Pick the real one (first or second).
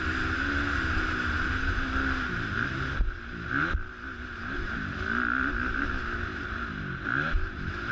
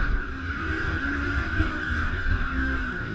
first